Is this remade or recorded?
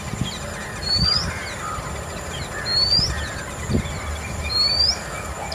recorded